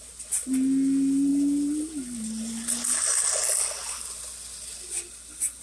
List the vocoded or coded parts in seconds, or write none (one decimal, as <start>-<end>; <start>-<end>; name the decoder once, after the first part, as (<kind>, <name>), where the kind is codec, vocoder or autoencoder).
none